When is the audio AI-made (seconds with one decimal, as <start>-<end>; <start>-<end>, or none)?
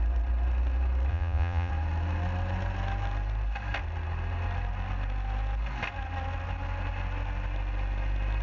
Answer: 1.1-1.7